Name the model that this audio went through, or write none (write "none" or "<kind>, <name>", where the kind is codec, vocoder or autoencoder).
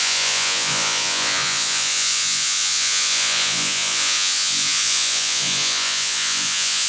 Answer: vocoder, Vocos